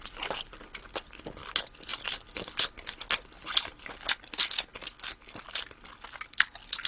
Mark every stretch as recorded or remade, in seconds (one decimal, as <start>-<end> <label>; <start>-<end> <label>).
0.0-6.9 recorded